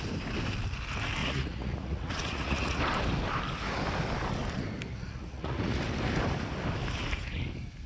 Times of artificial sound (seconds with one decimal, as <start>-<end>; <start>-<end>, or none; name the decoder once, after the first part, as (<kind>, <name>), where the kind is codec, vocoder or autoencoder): 1.2-2.8 (vocoder, Vocos); 4.9-5.8